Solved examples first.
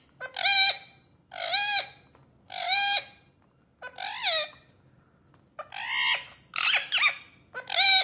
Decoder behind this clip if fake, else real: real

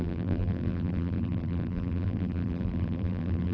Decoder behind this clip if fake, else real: fake, vocoder, BigVGAN v2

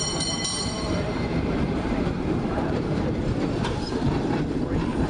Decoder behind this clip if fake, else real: fake, vocoder, BigVGAN v2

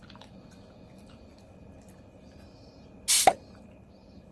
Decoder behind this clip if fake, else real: real